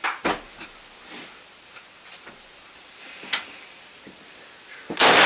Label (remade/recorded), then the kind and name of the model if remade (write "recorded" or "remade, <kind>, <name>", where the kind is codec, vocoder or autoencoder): recorded